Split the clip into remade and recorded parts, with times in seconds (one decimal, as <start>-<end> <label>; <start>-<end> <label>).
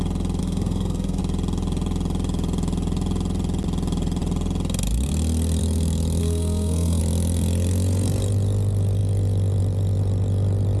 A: 0.0-0.4 recorded; 0.4-1.2 remade; 1.2-6.2 recorded; 6.2-7.0 remade; 7.0-10.8 recorded